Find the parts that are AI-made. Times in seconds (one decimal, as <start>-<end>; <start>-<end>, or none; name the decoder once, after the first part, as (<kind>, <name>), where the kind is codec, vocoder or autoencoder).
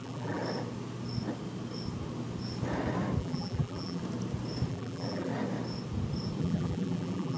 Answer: 0.0-0.4 (vocoder, BigVGAN v2); 3.2-4.0; 4.7-5.3; 6.4-7.4